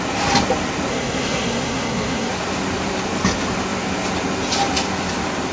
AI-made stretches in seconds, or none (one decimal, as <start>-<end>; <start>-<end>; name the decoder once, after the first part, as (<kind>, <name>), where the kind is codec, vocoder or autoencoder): 0.9-2.3 (codec, SNAC)